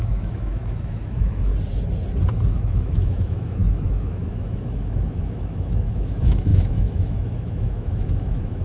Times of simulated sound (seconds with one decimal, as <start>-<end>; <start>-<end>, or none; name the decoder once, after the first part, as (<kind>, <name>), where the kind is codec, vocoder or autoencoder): 0.0-1.5 (autoencoder, DAC-VAE); 2.5-8.6